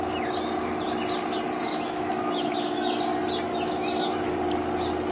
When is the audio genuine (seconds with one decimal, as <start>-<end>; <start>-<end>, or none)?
0.0-1.7; 3.0-3.5; 4.3-5.1